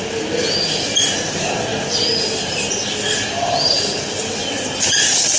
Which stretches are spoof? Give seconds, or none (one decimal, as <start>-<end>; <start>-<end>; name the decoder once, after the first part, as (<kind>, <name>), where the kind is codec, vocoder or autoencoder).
none